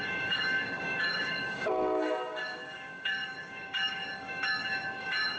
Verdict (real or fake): fake